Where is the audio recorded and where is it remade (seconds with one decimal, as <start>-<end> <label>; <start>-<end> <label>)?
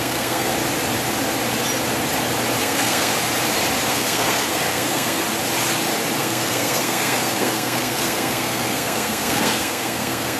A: 0.0-0.5 remade; 0.5-2.6 recorded; 2.6-3.1 remade; 3.1-3.9 recorded; 3.9-5.2 remade; 5.2-6.2 recorded; 6.2-10.4 remade